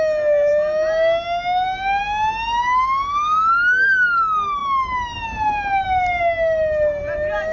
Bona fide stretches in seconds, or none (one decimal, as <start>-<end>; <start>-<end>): 0.0-7.5